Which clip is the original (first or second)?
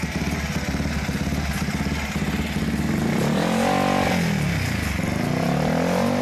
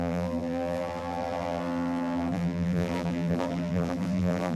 first